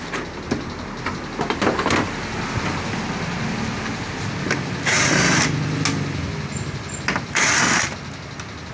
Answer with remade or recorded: recorded